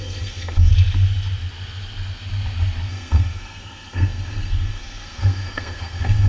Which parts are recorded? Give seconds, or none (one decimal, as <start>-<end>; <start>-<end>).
0.7-2.9